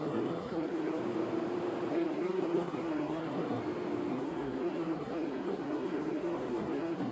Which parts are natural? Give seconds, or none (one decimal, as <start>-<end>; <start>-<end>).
1.0-1.9; 3.6-4.1